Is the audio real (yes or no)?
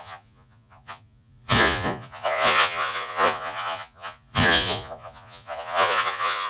no